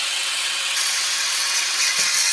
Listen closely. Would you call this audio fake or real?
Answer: fake